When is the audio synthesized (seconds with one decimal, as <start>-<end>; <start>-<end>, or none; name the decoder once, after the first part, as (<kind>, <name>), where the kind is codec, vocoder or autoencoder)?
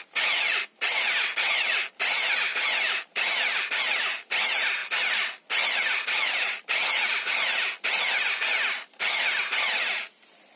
none